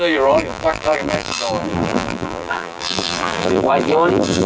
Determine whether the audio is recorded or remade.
remade